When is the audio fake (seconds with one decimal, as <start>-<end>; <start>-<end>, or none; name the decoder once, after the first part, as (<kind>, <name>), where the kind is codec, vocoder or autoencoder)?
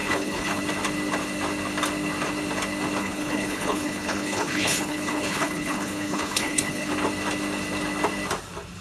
0.0-0.6 (codec, HILCodec); 3.0-6.9